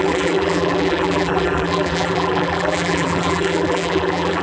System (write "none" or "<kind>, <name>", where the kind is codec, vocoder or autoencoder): vocoder, BigVGAN v2